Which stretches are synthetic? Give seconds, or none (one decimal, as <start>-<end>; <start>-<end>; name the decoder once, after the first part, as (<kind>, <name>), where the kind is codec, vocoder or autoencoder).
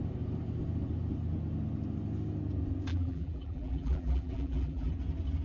2.9-4.9 (vocoder, BigVGAN v2)